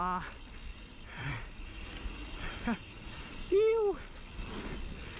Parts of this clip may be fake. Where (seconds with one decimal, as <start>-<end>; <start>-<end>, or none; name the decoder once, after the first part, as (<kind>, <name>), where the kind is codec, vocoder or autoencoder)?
0.7-3.5 (vocoder, Vocos)